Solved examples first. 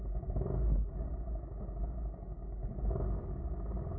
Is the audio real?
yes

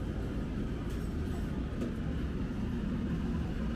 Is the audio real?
yes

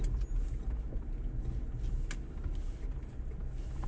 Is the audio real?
yes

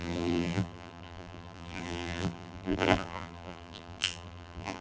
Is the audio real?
no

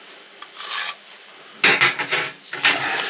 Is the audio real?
yes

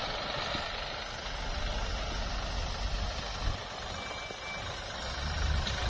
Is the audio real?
yes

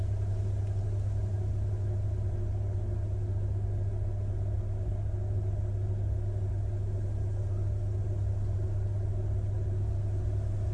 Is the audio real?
yes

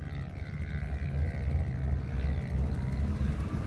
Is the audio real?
yes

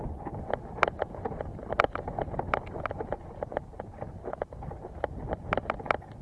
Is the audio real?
yes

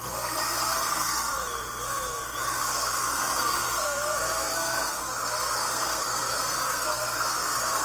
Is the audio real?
no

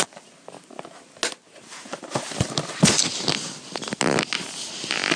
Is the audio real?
yes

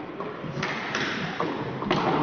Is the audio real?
yes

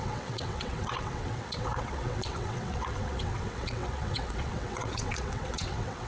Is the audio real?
no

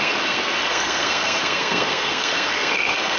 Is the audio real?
no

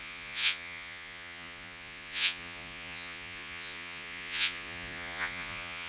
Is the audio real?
no